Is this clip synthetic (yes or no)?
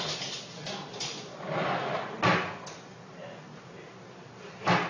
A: no